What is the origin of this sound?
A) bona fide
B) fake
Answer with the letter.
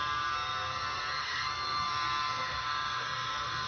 B